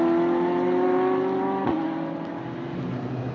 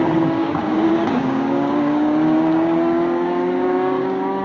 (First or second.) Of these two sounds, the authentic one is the first